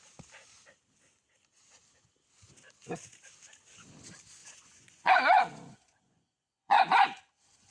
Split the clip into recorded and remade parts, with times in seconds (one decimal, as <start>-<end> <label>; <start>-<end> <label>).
0.0-4.4 recorded; 4.4-7.2 remade; 7.2-7.7 recorded